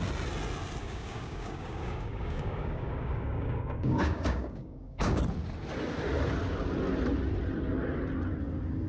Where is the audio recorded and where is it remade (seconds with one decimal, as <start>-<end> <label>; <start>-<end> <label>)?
0.0-0.8 recorded; 0.8-5.2 remade; 5.2-8.9 recorded